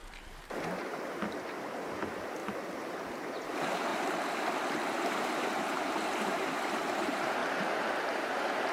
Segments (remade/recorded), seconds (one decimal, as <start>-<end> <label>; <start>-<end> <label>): 0.0-0.8 recorded; 0.8-2.4 remade; 2.4-3.3 recorded; 3.3-3.9 remade; 3.9-4.7 recorded; 4.7-7.4 remade; 7.4-8.0 recorded; 8.0-8.7 remade